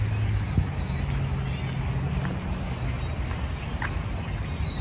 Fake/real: real